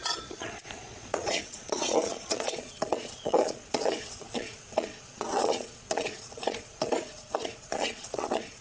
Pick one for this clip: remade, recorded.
remade